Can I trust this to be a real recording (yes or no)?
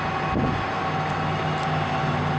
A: yes